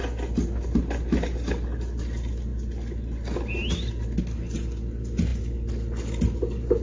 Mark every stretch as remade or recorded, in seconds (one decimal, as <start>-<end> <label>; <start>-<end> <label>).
0.0-6.8 recorded